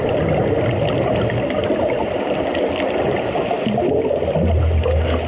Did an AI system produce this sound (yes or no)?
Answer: no